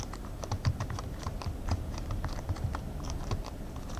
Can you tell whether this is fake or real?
fake